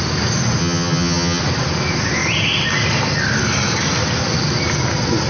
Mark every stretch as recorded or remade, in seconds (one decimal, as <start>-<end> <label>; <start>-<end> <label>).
0.0-0.6 recorded; 0.6-1.4 remade; 1.4-5.3 recorded